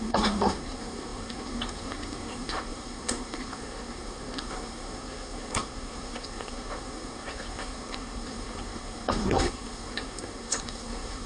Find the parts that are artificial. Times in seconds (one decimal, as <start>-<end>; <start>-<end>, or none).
0.0-11.3

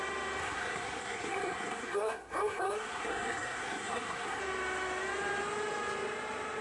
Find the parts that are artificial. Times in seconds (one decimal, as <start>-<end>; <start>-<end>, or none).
0.4-4.4

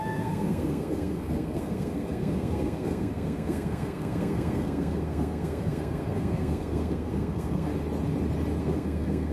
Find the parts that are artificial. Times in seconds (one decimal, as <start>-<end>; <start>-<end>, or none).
0.0-7.7; 8.6-9.3

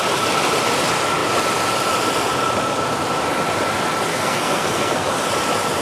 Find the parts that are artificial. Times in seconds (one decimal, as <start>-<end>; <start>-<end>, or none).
4.1-5.1

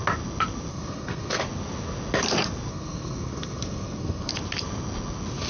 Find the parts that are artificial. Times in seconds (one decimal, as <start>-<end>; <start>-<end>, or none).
0.7-1.4; 2.7-4.3